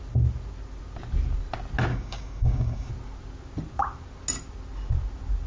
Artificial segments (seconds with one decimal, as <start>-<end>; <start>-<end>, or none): 1.9-2.9